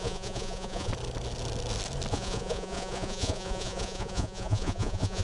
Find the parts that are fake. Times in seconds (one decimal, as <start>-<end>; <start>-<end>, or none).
0.0-0.9; 2.1-5.2